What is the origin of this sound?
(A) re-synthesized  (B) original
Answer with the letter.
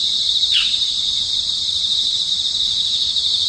A